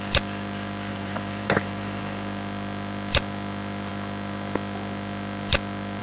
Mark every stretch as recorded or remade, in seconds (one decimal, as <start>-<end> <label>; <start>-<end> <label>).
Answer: 0.0-0.9 recorded; 0.9-2.0 remade; 2.0-6.0 recorded